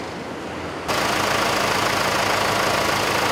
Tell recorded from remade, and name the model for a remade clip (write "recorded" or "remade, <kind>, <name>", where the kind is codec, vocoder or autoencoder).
recorded